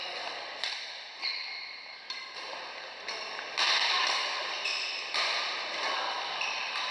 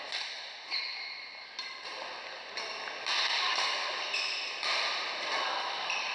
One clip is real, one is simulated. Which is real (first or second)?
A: second